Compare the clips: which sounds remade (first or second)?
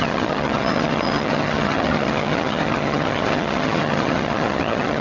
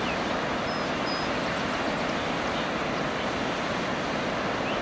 first